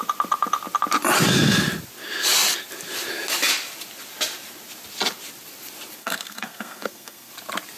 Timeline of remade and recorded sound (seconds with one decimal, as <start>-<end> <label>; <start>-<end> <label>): 0.0-6.0 recorded; 6.0-7.3 remade; 7.3-7.8 recorded